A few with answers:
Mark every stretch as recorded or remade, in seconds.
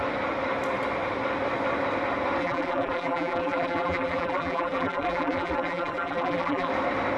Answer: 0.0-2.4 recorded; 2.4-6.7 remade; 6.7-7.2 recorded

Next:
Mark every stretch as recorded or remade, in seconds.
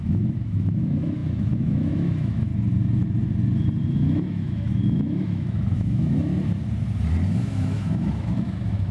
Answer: 0.0-2.5 remade; 2.5-3.9 recorded; 3.9-6.3 remade; 6.3-7.4 recorded; 7.4-8.9 remade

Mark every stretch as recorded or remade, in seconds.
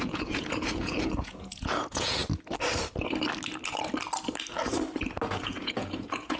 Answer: 0.0-2.2 remade; 2.2-5.4 recorded; 5.4-6.4 remade